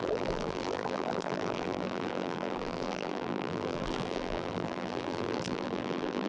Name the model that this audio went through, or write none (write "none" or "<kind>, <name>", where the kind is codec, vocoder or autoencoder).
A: vocoder, BigVGAN v2